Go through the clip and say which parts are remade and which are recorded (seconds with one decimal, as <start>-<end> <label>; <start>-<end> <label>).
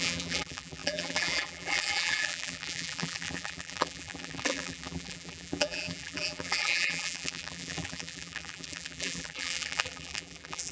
0.0-10.7 remade